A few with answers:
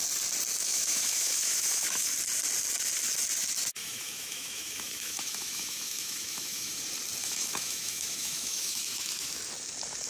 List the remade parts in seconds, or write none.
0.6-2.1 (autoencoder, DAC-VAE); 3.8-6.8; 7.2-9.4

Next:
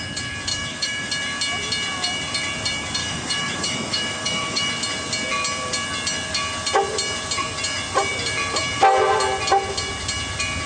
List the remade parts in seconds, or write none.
0.5-1.1 (autoencoder, DAC-VAE); 3.0-4.7